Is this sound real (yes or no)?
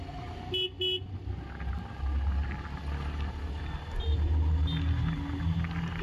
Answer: yes